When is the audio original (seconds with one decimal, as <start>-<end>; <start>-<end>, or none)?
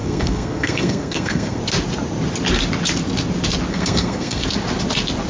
1.6-3.7; 4.4-5.3